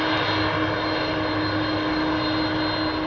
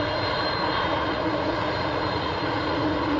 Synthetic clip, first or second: second